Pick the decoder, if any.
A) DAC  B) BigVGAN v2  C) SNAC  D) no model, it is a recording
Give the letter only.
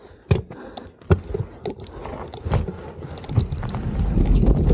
D